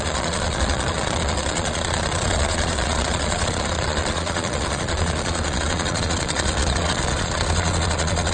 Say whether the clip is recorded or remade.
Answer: remade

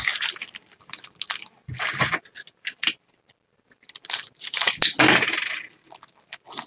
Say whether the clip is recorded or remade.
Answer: recorded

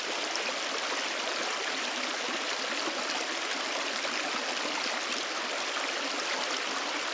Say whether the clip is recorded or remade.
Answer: recorded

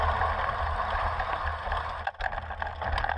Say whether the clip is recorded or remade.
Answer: recorded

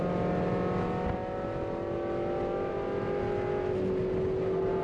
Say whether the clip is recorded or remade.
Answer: recorded